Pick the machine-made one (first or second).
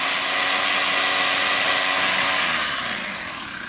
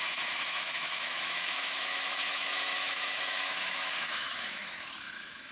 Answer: second